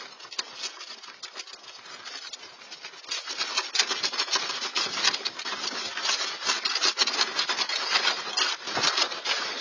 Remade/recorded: recorded